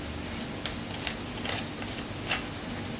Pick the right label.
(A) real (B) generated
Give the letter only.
A